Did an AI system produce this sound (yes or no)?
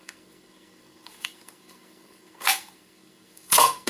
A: yes